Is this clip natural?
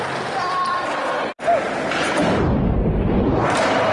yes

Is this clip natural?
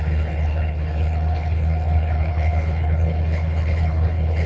no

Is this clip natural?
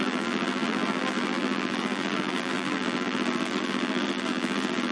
no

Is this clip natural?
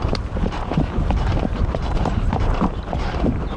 no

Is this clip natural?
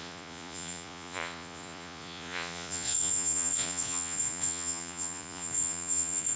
no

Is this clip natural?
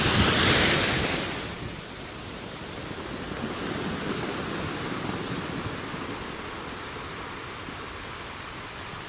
yes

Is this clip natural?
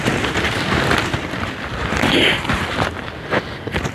yes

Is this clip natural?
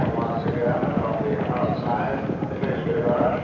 yes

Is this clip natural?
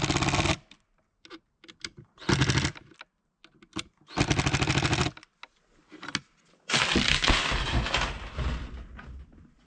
yes